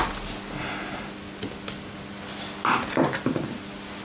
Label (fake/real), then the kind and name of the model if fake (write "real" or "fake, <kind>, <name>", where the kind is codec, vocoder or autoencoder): real